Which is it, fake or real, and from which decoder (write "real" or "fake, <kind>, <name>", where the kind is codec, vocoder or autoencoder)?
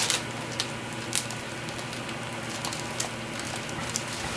real